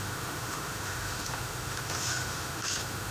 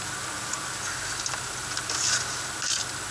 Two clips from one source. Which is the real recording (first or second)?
second